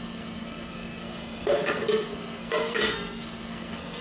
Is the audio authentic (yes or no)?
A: no